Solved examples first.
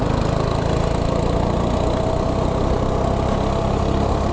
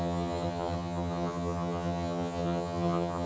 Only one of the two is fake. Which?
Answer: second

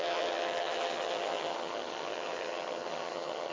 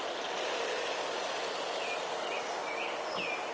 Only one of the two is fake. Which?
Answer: first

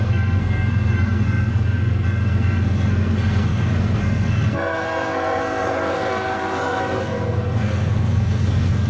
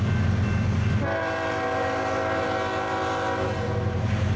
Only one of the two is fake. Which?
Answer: first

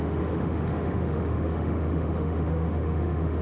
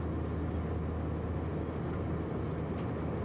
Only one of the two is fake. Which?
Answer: first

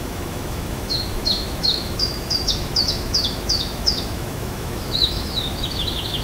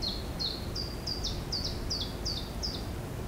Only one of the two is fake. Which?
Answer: first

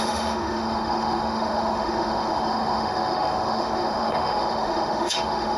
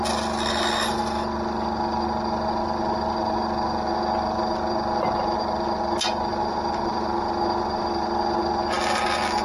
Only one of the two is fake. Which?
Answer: first